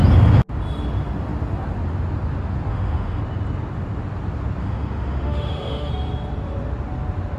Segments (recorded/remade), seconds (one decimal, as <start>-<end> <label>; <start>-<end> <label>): 0.0-2.7 recorded; 2.7-3.2 remade; 3.2-4.6 recorded; 4.6-5.9 remade; 5.9-7.4 recorded